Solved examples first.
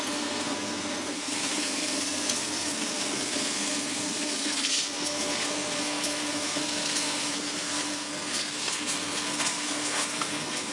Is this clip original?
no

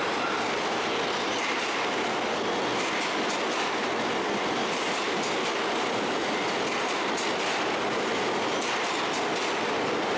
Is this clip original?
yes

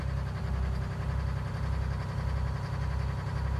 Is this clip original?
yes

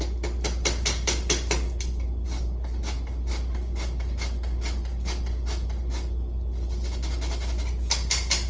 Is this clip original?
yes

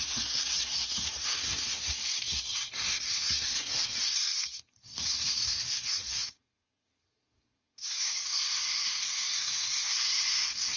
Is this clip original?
no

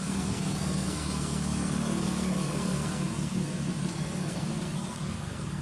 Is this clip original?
no